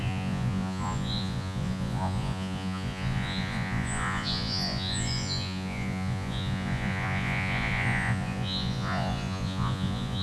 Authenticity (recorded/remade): remade